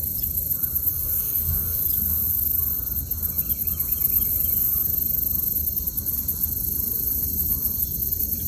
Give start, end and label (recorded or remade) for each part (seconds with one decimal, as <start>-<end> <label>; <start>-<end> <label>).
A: 0.0-0.9 recorded; 0.9-1.8 remade; 1.8-8.5 recorded